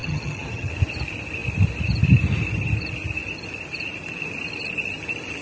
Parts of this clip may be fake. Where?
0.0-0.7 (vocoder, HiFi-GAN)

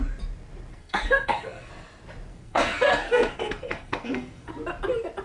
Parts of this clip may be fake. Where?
0.7-1.7 (codec, SNAC); 2.3-4.5

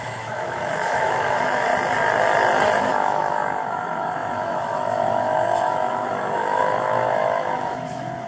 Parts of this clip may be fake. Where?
0.0-1.7 (autoencoder, DAC-VAE); 2.8-8.3